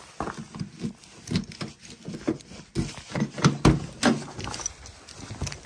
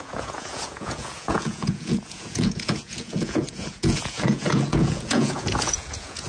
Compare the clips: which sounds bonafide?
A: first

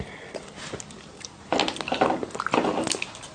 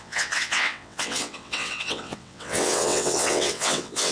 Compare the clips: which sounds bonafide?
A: first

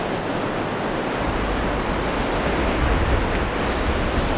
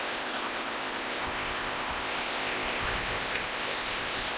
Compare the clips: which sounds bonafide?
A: first